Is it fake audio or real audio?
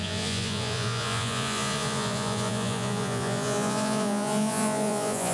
fake